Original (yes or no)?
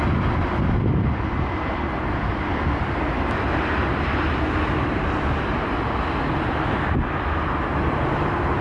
yes